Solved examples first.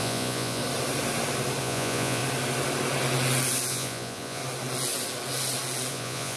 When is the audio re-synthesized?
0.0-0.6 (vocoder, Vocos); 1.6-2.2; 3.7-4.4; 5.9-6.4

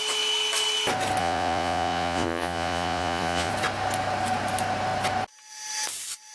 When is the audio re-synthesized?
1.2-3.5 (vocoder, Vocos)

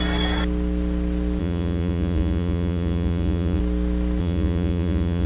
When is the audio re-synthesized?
1.4-3.6 (vocoder, Vocos); 4.2-5.3

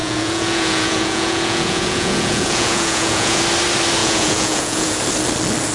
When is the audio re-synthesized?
0.0-3.4 (vocoder, Vocos); 4.0-5.0